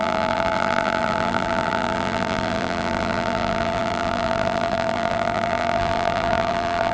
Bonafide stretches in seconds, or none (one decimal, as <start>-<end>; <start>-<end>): none